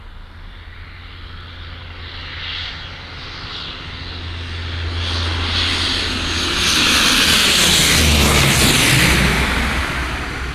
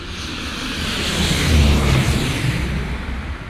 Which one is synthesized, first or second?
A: second